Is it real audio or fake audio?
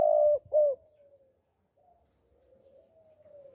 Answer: real